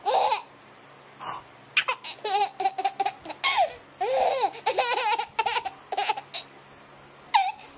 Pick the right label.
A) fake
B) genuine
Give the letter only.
B